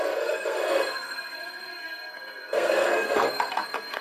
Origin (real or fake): fake